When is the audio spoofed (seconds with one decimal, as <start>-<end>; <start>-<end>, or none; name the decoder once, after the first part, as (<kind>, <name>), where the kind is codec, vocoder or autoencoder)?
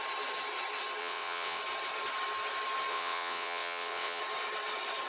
1.0-1.6 (vocoder, WaveNeXt); 2.9-4.2